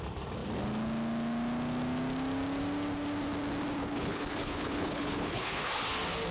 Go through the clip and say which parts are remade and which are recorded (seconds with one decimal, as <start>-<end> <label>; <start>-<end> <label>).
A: 0.0-3.8 recorded; 3.8-5.8 remade; 5.8-6.3 recorded